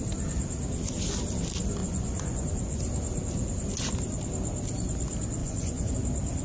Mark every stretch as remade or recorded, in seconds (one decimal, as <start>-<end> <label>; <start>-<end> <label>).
0.0-1.8 recorded; 1.8-2.8 remade; 2.8-5.4 recorded; 5.4-5.9 remade; 5.9-6.4 recorded